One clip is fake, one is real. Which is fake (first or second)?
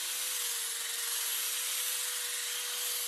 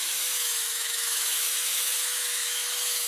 second